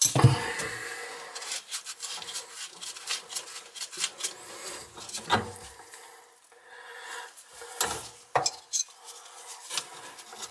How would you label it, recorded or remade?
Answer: recorded